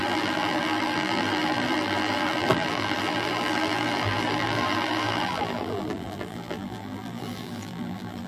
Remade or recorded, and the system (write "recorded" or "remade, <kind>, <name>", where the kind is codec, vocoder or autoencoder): remade, vocoder, BigVGAN v2